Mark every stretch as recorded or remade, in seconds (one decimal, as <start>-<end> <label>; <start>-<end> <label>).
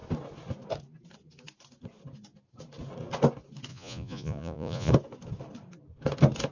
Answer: 0.0-3.7 recorded; 3.7-4.9 remade; 4.9-6.5 recorded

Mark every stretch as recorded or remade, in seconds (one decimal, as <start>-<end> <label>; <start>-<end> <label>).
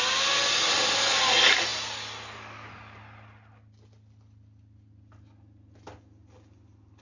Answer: 0.0-7.0 recorded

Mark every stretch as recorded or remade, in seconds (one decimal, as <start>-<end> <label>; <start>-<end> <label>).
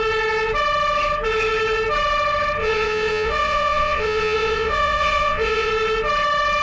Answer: 0.0-2.6 recorded; 2.6-5.7 remade; 5.7-6.6 recorded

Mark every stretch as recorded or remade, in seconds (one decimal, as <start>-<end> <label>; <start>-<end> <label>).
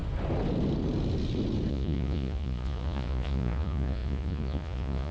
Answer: 0.0-1.7 recorded; 1.7-5.1 remade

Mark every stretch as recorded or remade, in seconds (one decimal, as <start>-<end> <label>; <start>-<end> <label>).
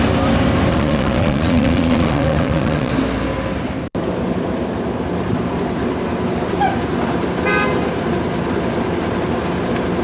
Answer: 0.0-0.7 recorded; 0.7-2.9 remade; 2.9-10.0 recorded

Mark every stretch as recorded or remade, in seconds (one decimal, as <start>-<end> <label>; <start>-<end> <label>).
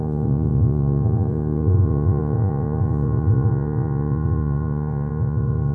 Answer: 0.0-5.7 remade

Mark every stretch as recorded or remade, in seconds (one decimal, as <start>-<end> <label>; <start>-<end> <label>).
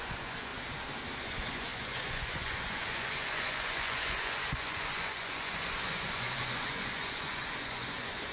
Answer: 0.0-0.5 remade; 0.5-1.2 recorded; 1.2-8.3 remade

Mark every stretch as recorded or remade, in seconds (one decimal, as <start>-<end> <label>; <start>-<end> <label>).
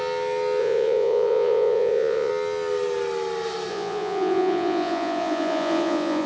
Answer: 0.0-0.6 recorded; 0.6-2.3 remade; 2.3-3.7 recorded; 3.7-6.3 remade